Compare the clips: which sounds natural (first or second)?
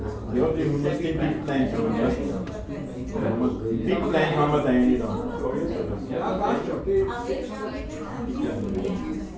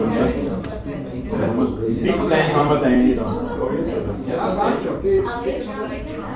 first